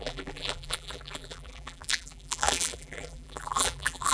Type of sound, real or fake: fake